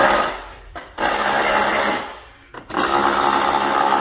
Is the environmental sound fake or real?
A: real